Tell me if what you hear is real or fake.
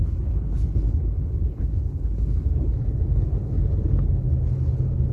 fake